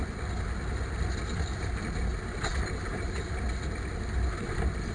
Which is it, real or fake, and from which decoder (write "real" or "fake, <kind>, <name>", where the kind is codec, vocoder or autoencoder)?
real